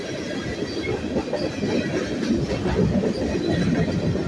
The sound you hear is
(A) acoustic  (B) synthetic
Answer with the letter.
A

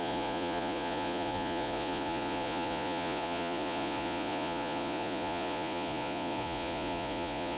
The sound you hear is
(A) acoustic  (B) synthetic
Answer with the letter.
B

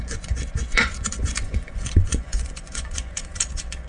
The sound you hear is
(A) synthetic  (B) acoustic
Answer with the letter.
A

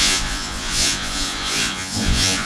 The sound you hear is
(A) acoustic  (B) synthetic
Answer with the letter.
B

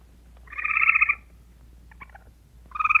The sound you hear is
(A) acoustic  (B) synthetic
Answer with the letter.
A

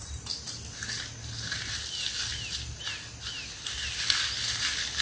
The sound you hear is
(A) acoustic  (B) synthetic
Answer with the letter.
A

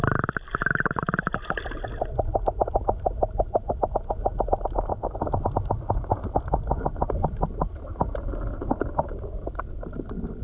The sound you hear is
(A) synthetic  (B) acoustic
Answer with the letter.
B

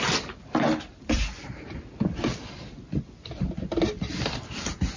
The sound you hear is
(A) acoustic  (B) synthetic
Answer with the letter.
A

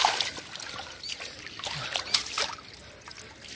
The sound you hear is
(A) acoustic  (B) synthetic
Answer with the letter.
A